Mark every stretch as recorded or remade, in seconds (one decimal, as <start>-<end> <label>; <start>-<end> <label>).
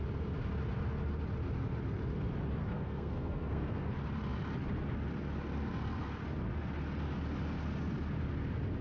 0.0-2.6 recorded; 2.6-3.9 remade; 3.9-8.8 recorded